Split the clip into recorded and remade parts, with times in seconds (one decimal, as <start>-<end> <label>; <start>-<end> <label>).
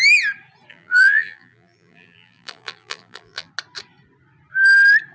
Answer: 0.0-0.7 recorded; 0.7-3.5 remade; 3.5-5.1 recorded